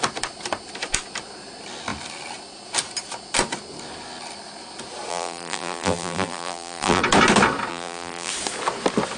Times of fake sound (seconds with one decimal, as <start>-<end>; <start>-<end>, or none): 5.1-7.0; 7.7-8.3